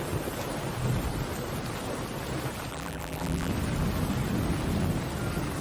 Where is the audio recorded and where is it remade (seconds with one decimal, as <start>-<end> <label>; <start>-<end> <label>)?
0.0-2.7 recorded; 2.7-3.5 remade; 3.5-5.6 recorded

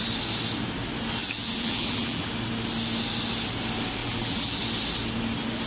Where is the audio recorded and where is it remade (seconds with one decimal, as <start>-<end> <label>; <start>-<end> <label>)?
0.0-1.2 recorded; 1.2-2.3 remade; 2.3-4.0 recorded; 4.0-4.6 remade; 4.6-5.7 recorded